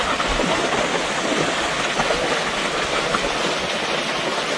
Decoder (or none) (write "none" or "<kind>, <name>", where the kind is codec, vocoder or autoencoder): none